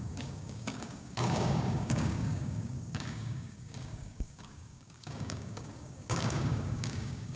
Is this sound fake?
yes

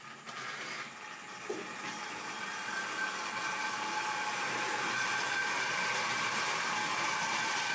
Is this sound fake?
no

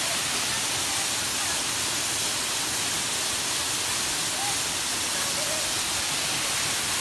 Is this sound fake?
no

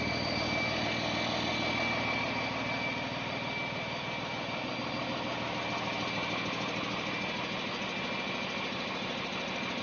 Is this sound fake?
no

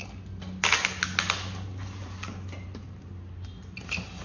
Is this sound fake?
no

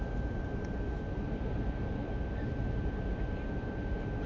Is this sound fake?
no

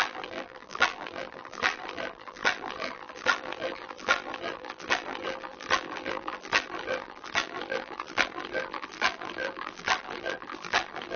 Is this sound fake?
yes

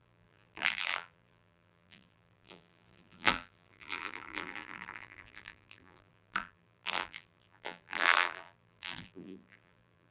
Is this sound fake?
yes